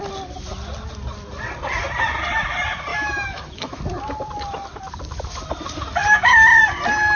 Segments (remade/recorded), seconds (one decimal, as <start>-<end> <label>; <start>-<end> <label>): 0.0-2.9 recorded; 2.9-3.8 remade; 3.8-7.2 recorded